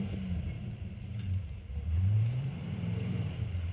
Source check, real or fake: fake